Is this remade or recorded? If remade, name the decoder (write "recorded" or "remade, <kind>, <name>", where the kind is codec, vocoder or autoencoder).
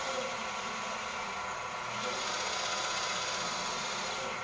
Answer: recorded